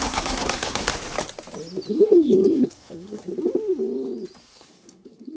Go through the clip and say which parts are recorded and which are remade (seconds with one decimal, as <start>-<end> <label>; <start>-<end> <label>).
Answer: 0.0-0.9 remade; 0.9-1.9 recorded; 1.9-3.3 remade; 3.3-4.4 recorded; 4.4-5.4 remade